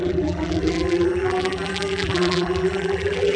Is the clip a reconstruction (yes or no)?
yes